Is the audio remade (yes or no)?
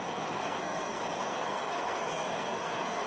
yes